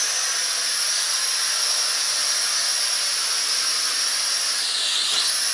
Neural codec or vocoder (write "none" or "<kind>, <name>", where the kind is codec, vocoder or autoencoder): none